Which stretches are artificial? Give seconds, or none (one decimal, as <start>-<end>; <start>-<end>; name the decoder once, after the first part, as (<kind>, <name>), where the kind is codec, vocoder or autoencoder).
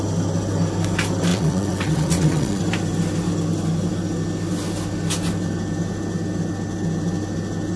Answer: 1.3-2.6 (vocoder, WaveNeXt)